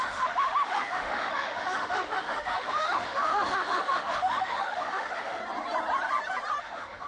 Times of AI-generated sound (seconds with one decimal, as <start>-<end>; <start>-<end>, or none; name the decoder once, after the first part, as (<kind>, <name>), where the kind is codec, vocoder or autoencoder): 0.0-5.4 (autoencoder, DAC-VAE); 6.6-7.1